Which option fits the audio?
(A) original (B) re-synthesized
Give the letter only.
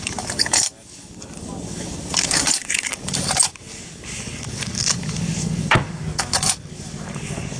B